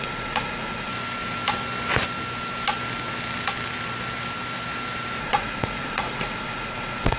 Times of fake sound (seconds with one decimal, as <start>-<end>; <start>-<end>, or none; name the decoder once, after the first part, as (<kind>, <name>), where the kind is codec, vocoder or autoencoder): 0.0-0.9 (vocoder, Vocos); 5.2-7.2